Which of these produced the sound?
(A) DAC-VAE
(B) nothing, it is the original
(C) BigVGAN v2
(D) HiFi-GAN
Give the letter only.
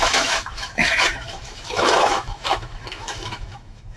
A